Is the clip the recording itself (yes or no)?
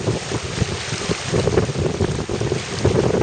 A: no